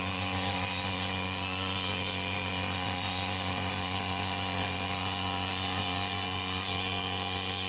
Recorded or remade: remade